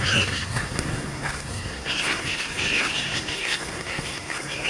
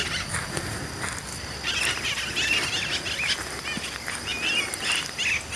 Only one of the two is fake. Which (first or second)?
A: first